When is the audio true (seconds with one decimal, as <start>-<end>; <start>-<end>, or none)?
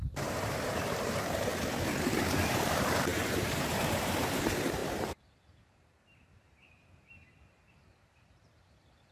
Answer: 1.5-2.2